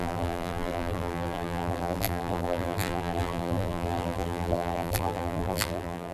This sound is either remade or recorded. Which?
remade